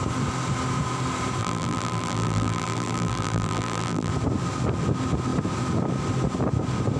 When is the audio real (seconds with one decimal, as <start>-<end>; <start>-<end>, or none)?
0.0-1.4; 4.1-7.0